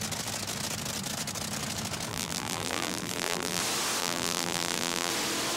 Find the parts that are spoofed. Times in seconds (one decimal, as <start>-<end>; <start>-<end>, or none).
2.1-3.6; 4.0-5.1